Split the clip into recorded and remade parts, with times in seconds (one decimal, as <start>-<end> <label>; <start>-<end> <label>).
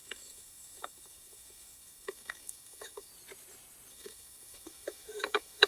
0.0-3.1 remade; 3.1-3.9 recorded; 3.9-5.7 remade